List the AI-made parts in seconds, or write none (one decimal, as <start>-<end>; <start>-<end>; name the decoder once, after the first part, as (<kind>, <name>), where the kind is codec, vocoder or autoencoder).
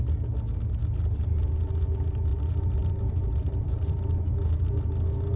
2.3-4.2 (vocoder, BigVGAN v2)